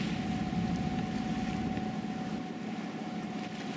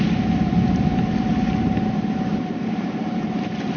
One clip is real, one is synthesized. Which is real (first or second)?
first